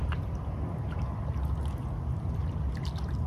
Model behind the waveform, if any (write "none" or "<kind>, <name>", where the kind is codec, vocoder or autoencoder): none